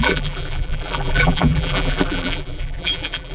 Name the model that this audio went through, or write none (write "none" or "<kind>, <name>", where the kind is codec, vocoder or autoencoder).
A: vocoder, BigVGAN v2